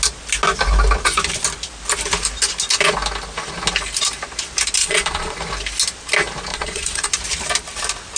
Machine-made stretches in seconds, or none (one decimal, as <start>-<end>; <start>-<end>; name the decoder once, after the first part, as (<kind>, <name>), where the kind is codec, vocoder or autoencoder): 4.8-5.3 (vocoder, Vocos); 6.5-7.1